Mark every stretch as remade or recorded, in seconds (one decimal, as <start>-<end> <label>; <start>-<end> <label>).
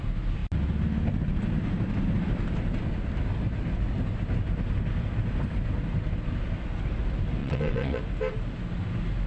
0.0-7.4 recorded; 7.4-8.0 remade; 8.0-9.3 recorded